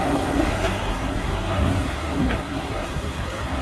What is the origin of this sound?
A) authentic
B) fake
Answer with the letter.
B